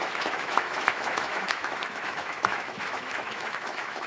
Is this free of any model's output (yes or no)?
no